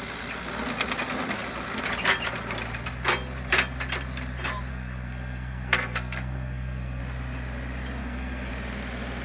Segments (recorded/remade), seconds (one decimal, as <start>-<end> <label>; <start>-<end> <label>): 0.0-4.7 recorded; 4.7-7.0 remade; 7.0-8.0 recorded; 8.0-8.5 remade; 8.5-9.2 recorded